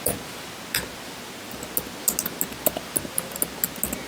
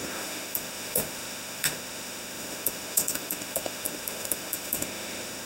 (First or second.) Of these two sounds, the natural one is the first